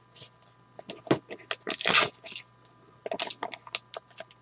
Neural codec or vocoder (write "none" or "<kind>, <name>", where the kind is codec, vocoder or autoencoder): none